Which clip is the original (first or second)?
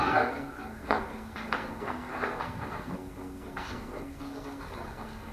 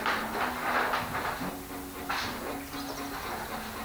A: second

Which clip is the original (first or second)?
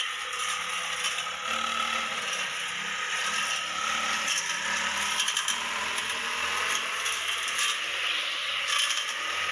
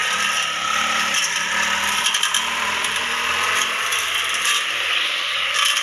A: first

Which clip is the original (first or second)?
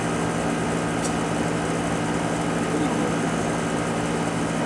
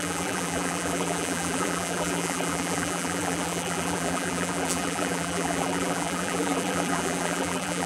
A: first